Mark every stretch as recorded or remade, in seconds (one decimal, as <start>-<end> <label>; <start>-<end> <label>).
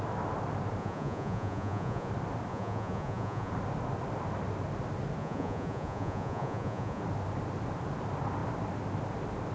0.0-0.8 recorded; 0.8-2.1 remade; 2.1-2.5 recorded; 2.5-3.5 remade; 3.5-5.2 recorded; 5.2-7.0 remade; 7.0-9.5 recorded